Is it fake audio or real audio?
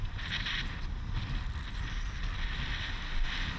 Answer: real